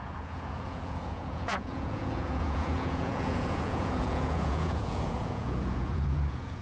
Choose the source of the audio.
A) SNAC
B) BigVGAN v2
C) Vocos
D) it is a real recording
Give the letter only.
C